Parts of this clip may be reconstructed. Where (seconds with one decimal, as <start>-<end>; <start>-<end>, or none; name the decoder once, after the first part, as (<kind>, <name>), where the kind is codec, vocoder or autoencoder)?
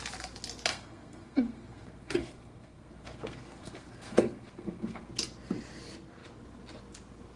0.7-5.1 (codec, SNAC)